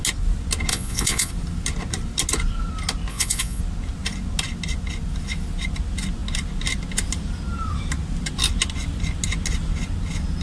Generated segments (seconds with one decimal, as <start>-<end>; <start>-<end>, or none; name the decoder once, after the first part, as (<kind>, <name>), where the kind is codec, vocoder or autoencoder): 0.7-1.3 (vocoder, Vocos); 3.1-3.6